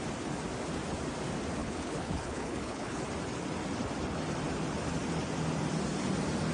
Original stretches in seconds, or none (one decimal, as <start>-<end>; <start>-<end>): 0.0-1.6; 3.0-6.5

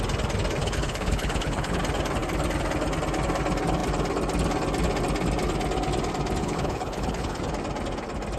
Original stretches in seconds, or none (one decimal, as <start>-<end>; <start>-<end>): 0.0-0.6; 1.8-6.4; 7.4-8.4

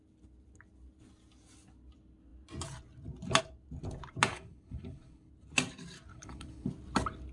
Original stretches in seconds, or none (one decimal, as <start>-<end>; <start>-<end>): 0.0-4.3; 5.3-6.1; 6.7-7.3